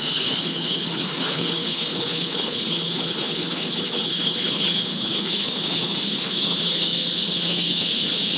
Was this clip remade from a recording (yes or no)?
yes